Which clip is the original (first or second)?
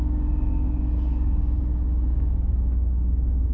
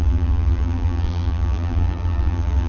first